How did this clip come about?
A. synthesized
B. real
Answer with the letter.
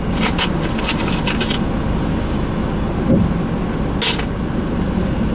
B